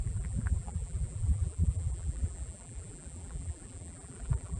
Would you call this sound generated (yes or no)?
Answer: yes